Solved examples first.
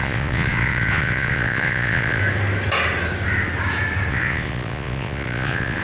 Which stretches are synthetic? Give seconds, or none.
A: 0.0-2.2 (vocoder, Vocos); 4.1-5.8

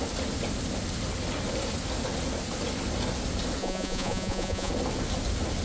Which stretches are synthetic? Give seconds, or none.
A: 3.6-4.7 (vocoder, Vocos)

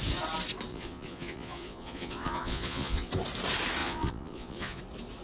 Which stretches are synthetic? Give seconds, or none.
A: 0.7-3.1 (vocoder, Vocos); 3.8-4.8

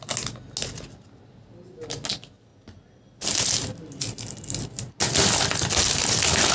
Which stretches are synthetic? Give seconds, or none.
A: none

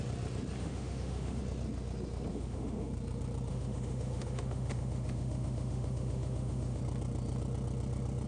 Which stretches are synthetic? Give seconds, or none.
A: 0.6-1.4 (autoencoder, DAC-VAE); 2.3-2.9; 3.5-6.8